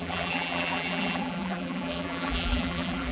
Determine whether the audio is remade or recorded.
remade